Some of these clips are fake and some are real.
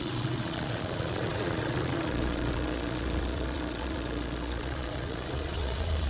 fake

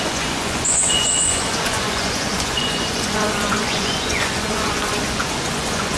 fake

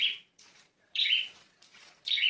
fake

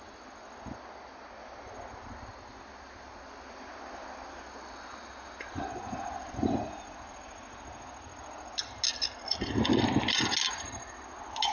real